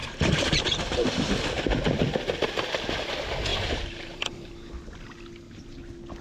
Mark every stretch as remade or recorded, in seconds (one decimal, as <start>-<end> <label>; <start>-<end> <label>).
0.0-1.3 remade; 1.3-3.5 recorded; 3.5-4.5 remade; 4.5-6.2 recorded